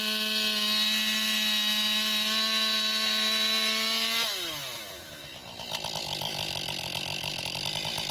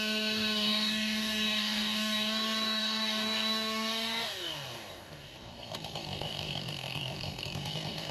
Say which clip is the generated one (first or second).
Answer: second